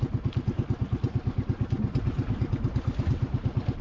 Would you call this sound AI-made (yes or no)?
no